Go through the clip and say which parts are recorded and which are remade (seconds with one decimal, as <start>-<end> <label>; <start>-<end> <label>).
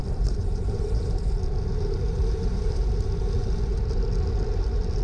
0.0-3.0 remade; 3.0-5.0 recorded